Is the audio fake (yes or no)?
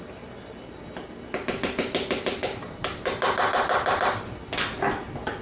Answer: no